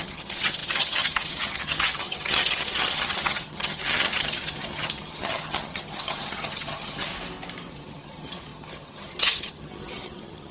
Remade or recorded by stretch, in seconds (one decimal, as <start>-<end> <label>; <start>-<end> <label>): 0.0-7.1 remade; 7.1-7.7 recorded; 7.7-10.5 remade

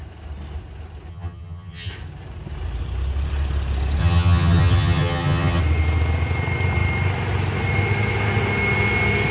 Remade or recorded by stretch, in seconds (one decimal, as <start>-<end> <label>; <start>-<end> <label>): 0.0-1.1 recorded; 1.1-1.9 remade; 1.9-4.0 recorded; 4.0-5.6 remade; 5.6-9.3 recorded

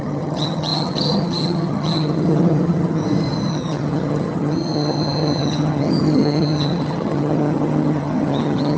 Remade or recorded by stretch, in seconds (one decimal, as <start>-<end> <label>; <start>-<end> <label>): 0.0-3.0 remade; 3.0-3.5 recorded; 3.5-8.8 remade

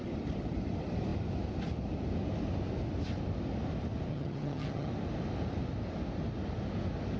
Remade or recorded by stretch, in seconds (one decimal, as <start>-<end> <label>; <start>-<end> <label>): 0.0-4.1 recorded; 4.1-4.9 remade; 4.9-7.2 recorded

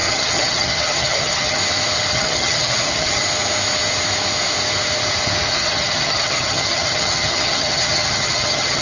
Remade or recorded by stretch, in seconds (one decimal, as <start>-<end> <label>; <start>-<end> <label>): 0.0-1.6 remade; 1.6-2.1 recorded; 2.1-3.2 remade; 3.2-5.5 recorded; 5.5-8.8 remade

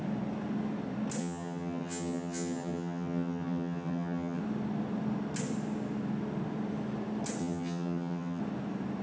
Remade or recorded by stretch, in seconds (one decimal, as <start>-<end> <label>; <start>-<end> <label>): 0.0-1.2 recorded; 1.2-4.4 remade; 4.4-7.4 recorded; 7.4-8.4 remade; 8.4-9.0 recorded

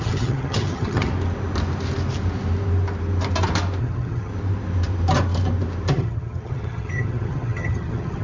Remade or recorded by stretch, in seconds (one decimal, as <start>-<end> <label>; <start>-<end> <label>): 0.0-1.1 remade; 1.1-3.8 recorded; 3.8-4.3 remade; 4.3-5.9 recorded; 5.9-8.2 remade